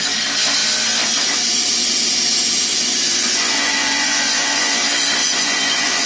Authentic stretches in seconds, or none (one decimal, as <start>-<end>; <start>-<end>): 0.0-2.7; 4.8-5.2